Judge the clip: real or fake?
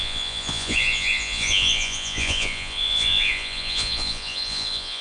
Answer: fake